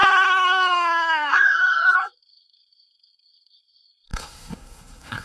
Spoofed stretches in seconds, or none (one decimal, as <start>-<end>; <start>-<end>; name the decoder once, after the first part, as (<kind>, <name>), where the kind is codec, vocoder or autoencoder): 0.0-5.2 (codec, SNAC)